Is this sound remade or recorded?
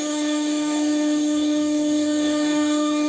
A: remade